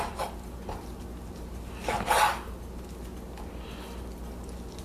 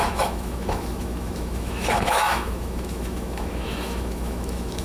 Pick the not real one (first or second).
second